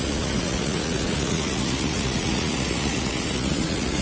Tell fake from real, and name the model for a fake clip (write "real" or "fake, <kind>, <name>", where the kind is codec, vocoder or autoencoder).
fake, vocoder, Vocos